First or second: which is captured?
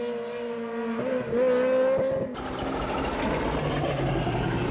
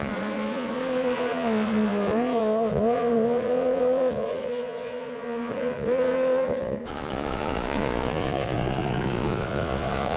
first